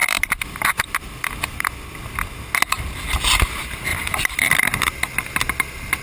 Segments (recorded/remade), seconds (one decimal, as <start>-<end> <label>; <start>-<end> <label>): 0.0-1.6 remade; 1.6-3.9 recorded; 3.9-4.5 remade; 4.5-6.0 recorded